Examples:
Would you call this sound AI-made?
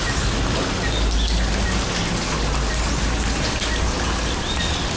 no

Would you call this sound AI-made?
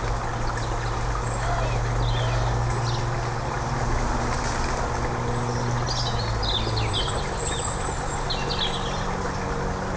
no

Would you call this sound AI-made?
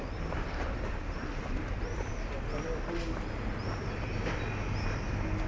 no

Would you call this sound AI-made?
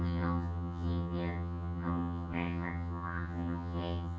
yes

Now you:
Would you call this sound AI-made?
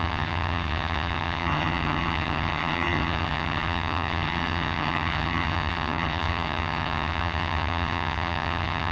yes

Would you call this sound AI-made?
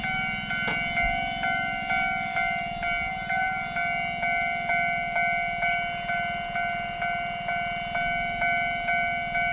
no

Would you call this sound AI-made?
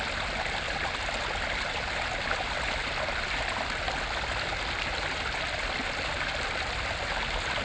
no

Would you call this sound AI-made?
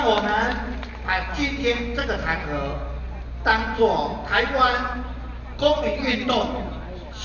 no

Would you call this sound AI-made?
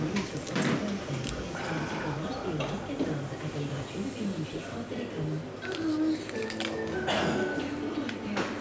no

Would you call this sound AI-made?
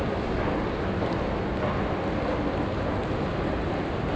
no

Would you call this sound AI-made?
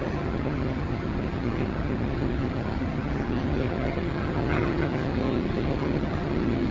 yes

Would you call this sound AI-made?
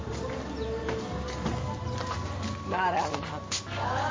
no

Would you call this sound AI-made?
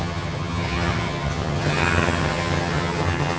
yes